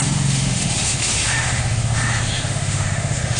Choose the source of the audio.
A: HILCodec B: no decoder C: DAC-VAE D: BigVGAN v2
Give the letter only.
C